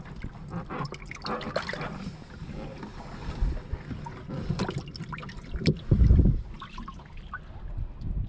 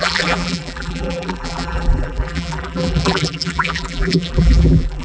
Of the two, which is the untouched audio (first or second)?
first